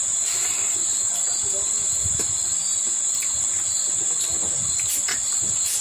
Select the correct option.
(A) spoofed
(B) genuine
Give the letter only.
B